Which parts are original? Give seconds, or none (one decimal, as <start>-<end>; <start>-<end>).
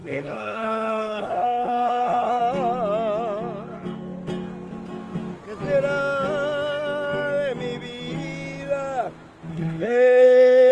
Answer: 2.4-9.5